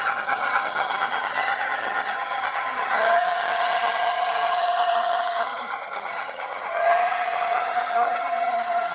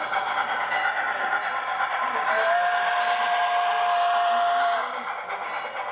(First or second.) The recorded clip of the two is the second